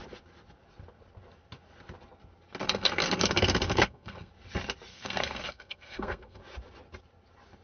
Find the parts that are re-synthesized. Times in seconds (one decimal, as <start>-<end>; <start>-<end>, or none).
2.6-4.3; 4.9-6.4